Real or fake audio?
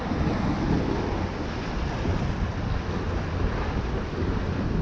fake